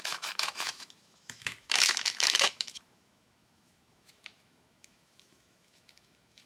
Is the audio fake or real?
fake